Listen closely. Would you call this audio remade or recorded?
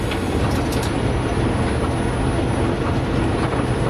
recorded